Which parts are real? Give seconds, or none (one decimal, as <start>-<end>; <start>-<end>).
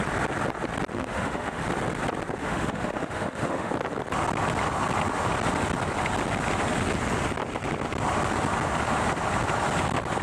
0.0-0.9; 1.6-2.4; 3.7-10.2